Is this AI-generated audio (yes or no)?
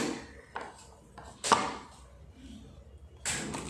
no